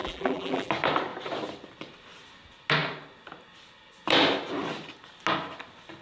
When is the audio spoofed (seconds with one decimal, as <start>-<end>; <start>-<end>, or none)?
0.0-0.7